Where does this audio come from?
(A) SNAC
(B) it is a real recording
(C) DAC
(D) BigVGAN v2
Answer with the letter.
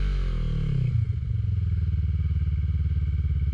B